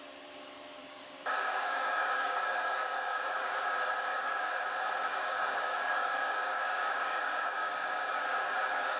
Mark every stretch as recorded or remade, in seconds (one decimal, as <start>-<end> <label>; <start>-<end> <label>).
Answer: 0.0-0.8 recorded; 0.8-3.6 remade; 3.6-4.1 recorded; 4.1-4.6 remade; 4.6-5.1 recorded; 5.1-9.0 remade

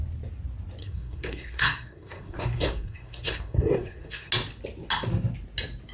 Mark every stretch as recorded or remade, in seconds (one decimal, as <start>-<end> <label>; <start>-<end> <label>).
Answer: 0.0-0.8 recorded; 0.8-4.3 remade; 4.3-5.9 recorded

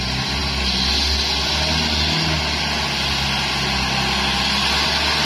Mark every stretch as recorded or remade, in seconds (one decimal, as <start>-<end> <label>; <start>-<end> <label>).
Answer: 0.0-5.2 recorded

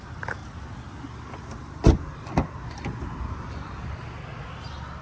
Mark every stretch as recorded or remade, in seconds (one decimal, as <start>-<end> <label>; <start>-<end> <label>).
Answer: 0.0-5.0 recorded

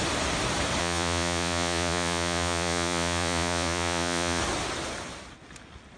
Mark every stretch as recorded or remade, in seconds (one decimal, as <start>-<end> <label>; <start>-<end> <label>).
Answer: 0.0-0.8 recorded; 0.8-4.4 remade; 4.4-6.0 recorded

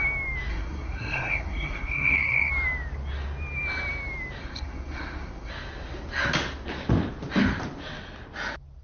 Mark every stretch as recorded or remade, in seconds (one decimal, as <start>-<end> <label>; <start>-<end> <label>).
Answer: 0.0-0.5 recorded; 0.5-2.5 remade; 2.5-4.4 recorded; 4.4-5.5 remade; 5.5-8.8 recorded